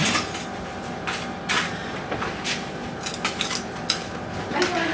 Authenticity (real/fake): real